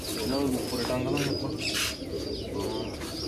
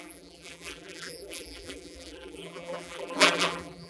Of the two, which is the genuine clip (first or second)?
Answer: first